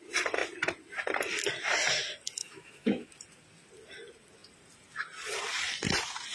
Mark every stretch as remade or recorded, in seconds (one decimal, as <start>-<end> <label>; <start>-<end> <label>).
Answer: 0.0-2.4 recorded; 2.4-3.1 remade; 3.1-6.3 recorded